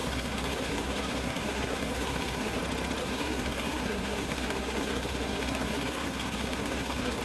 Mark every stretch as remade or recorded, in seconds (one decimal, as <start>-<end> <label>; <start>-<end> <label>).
0.0-2.6 remade; 2.6-3.0 recorded; 3.0-7.2 remade

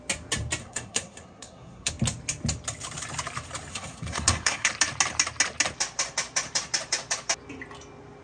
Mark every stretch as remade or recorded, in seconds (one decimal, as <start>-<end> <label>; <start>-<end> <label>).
0.0-0.6 recorded; 0.6-1.9 remade; 1.9-3.7 recorded; 3.7-4.7 remade; 4.7-8.2 recorded

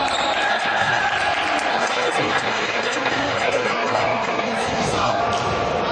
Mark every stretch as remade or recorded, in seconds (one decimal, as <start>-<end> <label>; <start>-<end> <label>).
0.0-0.5 recorded; 0.5-1.0 remade; 1.0-1.7 recorded; 1.7-5.2 remade; 5.2-5.9 recorded

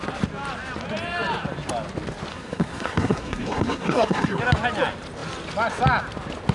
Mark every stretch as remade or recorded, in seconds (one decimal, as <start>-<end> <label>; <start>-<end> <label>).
0.0-2.3 recorded; 2.3-4.4 remade; 4.4-6.5 recorded

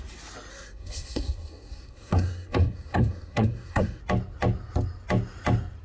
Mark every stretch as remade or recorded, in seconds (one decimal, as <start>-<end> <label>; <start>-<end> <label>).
0.0-0.5 recorded; 0.5-4.0 remade; 4.0-5.8 recorded

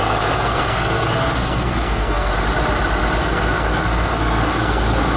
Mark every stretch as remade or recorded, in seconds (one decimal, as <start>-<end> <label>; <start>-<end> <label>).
0.0-2.3 remade; 2.3-3.2 recorded; 3.2-5.2 remade

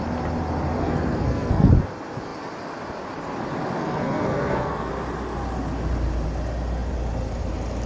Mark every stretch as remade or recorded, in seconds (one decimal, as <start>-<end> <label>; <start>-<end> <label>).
0.0-0.8 recorded; 0.8-1.7 remade; 1.7-3.8 recorded; 3.8-4.9 remade; 4.9-7.9 recorded

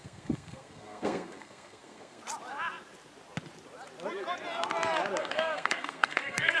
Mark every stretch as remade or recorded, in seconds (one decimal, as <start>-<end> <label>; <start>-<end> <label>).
0.0-2.2 remade; 2.2-5.2 recorded; 5.2-6.6 remade